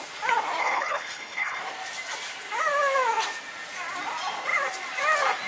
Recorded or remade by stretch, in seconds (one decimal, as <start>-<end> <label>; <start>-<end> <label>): 0.0-0.6 recorded; 0.6-1.6 remade; 1.6-5.5 recorded